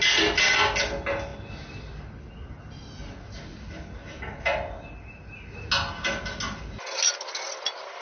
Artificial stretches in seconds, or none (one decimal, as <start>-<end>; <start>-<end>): none